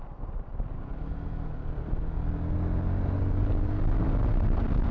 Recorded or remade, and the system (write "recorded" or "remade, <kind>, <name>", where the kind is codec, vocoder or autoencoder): recorded